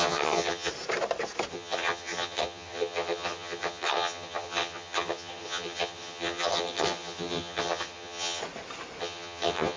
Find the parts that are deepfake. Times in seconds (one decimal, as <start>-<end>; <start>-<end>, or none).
0.0-0.7; 1.5-8.4; 9.0-9.8